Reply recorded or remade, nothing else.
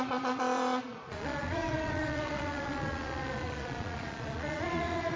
remade